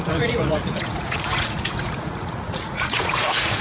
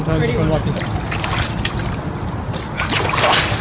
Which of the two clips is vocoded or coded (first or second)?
first